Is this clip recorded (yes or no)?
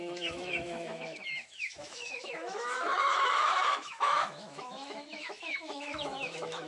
no